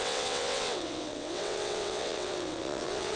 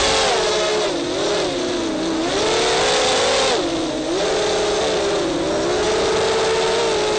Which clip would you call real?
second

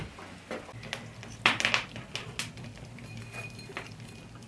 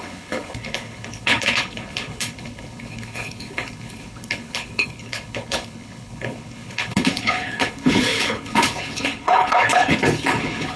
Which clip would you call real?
first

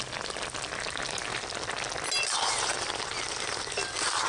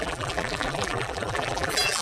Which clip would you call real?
first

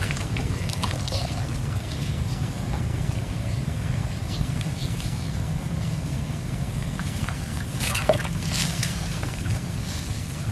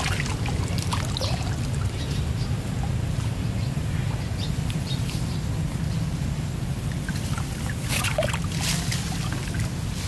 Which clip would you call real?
second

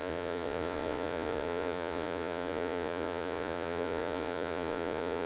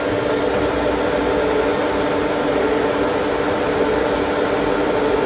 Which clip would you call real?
second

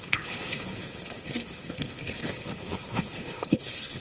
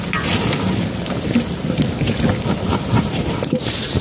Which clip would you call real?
second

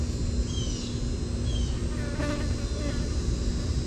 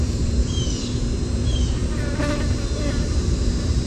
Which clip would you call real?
first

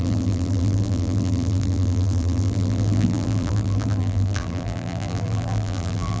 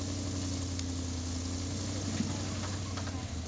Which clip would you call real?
second